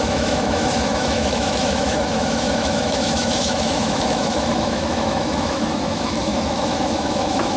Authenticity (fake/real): fake